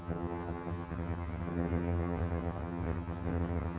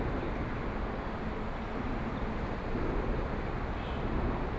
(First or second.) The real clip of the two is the second